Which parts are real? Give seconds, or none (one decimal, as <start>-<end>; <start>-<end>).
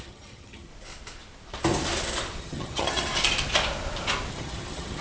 0.7-2.4; 3.1-4.3